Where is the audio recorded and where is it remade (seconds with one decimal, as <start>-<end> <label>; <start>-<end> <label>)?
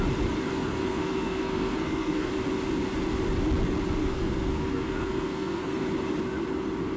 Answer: 0.0-0.5 recorded; 0.5-2.3 remade; 2.3-4.0 recorded; 4.0-5.8 remade; 5.8-7.0 recorded